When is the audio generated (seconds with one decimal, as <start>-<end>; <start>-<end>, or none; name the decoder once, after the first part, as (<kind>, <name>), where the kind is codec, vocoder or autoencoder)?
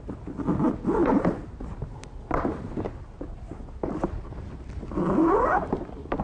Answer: none